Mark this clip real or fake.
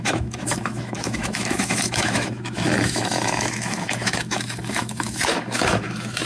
fake